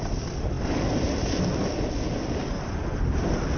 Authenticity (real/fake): real